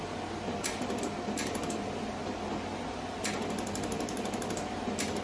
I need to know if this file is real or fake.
real